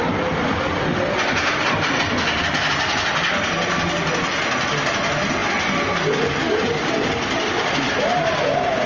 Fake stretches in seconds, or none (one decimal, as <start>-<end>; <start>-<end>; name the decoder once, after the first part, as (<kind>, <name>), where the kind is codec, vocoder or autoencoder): none